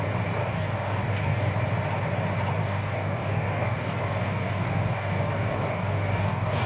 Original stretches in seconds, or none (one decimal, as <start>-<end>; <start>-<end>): 0.0-0.4; 1.5-2.6